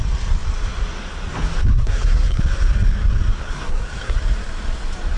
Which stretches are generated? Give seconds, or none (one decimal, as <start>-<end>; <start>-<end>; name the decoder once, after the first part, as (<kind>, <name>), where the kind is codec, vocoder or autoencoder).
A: 1.7-2.4 (codec, SNAC); 3.4-4.2